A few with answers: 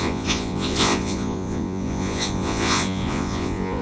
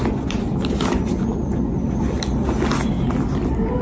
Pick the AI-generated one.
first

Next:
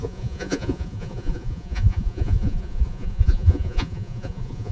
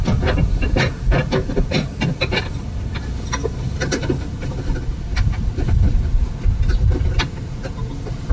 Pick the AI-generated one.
first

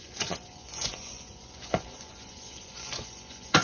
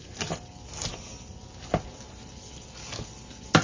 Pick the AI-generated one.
first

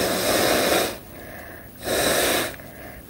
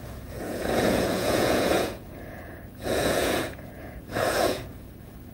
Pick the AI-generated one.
second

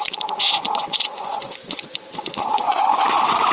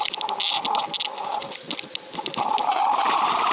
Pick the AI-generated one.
first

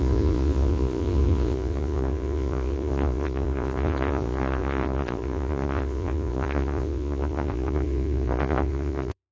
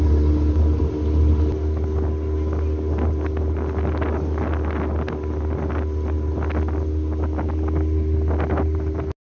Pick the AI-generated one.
first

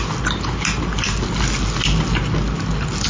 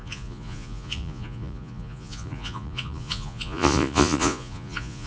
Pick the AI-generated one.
second